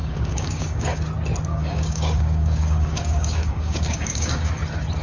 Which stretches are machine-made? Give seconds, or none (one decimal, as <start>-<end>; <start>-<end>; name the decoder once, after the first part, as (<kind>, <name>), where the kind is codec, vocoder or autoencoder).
0.0-1.0 (codec, DAC); 1.5-4.5